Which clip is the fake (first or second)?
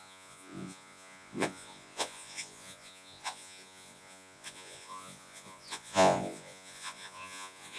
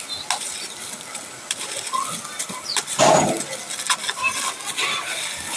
first